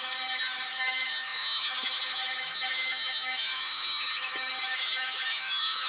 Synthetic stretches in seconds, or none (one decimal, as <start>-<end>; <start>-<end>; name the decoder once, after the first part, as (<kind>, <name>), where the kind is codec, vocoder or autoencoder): 0.0-5.9 (autoencoder, DAC-VAE)